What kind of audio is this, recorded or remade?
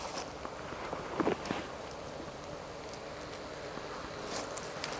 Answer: recorded